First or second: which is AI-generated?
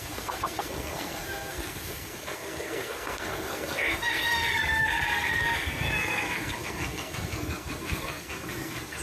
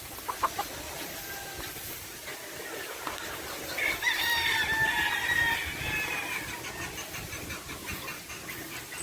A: first